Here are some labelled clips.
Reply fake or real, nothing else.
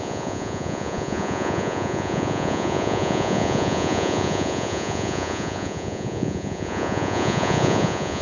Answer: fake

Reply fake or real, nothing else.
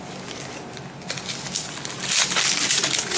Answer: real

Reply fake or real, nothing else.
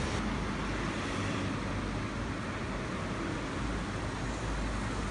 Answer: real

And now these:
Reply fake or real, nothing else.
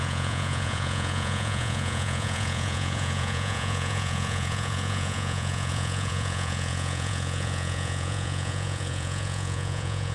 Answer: fake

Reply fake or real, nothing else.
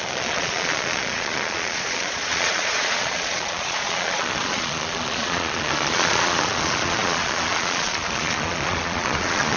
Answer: fake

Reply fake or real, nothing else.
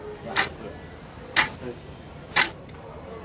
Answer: real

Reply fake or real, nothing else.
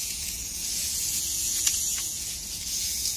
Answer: fake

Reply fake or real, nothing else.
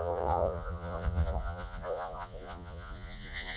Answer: fake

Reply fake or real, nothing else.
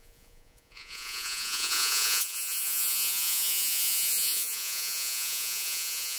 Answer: fake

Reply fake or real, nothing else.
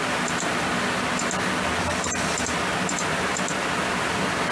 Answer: real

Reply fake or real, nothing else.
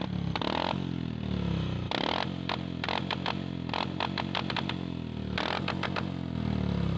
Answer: real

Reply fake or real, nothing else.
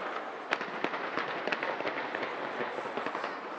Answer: real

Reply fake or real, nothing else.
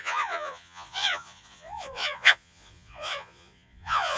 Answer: fake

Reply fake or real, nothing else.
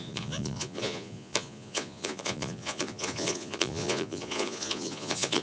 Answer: fake